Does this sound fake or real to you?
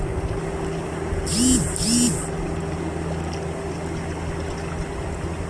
real